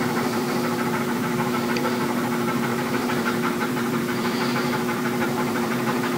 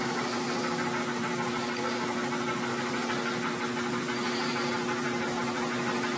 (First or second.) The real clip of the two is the second